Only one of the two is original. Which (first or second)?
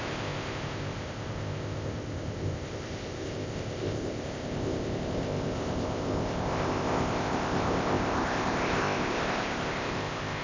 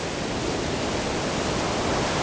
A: second